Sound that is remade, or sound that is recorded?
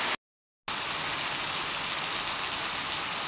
recorded